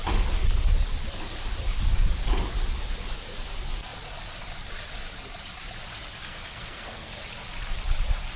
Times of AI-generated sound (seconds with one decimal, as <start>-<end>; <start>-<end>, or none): 6.2-7.2